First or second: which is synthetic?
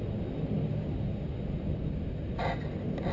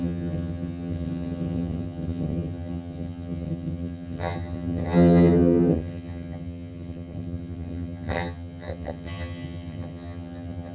second